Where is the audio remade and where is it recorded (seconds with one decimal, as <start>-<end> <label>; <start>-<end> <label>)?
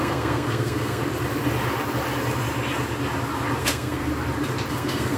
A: 0.0-1.0 remade; 1.0-3.6 recorded; 3.6-4.1 remade; 4.1-4.7 recorded; 4.7-5.2 remade